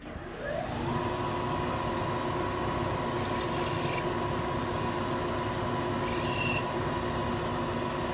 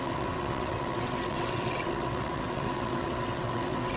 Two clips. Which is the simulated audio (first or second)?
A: second